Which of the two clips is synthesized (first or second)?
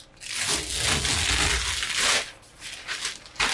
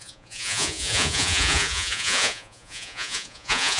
second